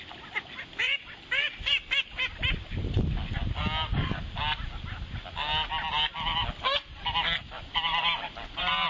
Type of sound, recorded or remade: recorded